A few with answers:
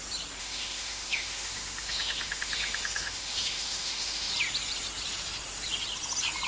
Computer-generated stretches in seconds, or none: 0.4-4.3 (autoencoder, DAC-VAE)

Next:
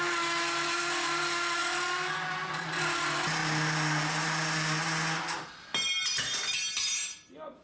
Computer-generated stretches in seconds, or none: none

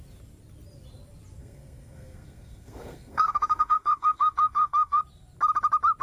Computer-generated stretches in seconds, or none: 1.4-5.0 (codec, SNAC)

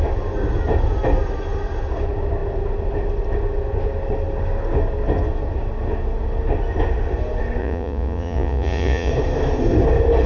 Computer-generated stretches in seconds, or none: 7.6-9.1 (vocoder, Vocos)

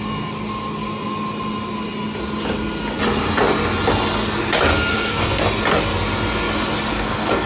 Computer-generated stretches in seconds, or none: 4.9-5.4 (codec, SNAC); 6.9-7.5

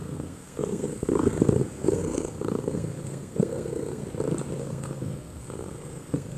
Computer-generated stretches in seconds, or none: 0.0-4.0 (codec, SNAC); 4.6-6.4

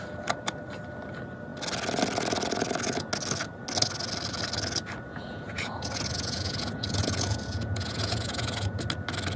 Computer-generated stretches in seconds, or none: 5.1-8.8 (vocoder, Vocos)

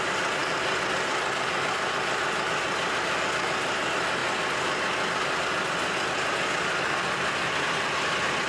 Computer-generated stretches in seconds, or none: none